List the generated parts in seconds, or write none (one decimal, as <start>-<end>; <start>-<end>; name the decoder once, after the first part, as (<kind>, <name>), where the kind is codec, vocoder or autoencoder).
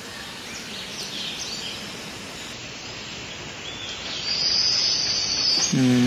none